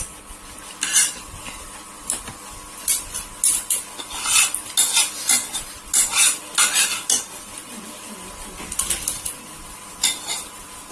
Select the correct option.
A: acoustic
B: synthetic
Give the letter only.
A